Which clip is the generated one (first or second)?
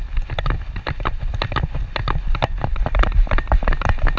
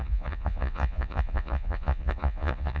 second